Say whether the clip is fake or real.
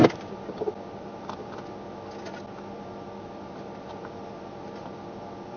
real